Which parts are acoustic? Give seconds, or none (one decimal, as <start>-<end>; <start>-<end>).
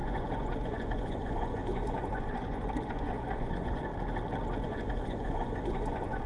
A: 3.9-4.6